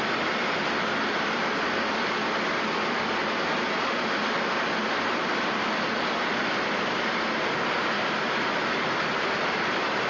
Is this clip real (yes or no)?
yes